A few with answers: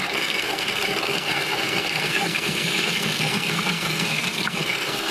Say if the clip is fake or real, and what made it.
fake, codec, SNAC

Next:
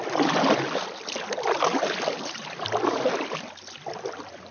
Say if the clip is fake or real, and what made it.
real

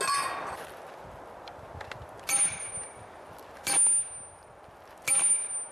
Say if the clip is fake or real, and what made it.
real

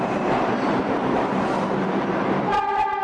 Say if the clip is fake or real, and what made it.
fake, vocoder, BigVGAN v2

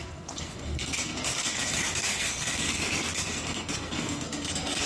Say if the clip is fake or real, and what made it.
fake, codec, SNAC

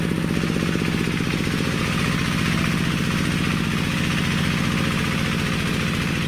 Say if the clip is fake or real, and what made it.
real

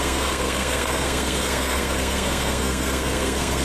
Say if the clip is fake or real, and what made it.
fake, codec, SNAC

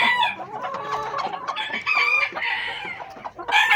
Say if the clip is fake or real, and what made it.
real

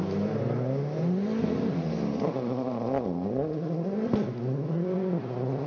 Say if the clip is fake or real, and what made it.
real